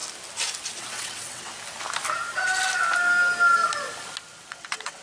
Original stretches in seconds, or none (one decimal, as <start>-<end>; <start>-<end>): 0.0-0.8; 1.5-4.5